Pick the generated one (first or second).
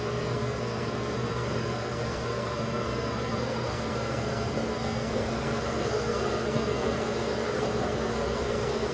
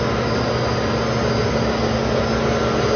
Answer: first